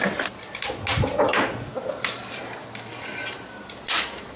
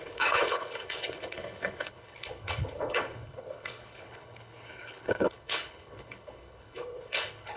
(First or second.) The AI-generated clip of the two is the second